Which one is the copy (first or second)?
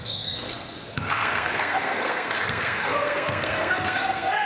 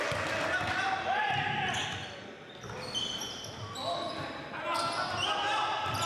first